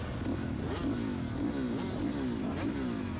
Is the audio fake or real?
real